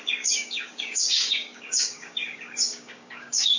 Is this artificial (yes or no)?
yes